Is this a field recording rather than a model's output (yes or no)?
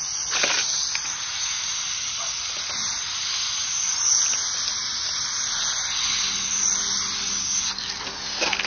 yes